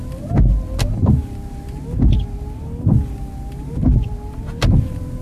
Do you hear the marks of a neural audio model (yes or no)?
no